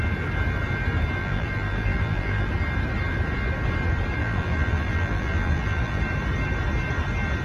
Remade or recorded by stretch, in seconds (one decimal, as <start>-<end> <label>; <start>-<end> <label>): 0.0-1.2 recorded; 1.2-2.5 remade; 2.5-4.2 recorded; 4.2-6.0 remade; 6.0-7.4 recorded